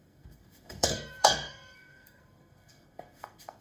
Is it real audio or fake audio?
fake